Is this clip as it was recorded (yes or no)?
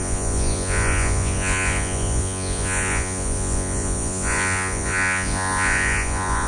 no